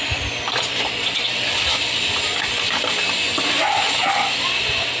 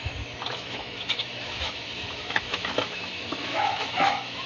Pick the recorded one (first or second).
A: first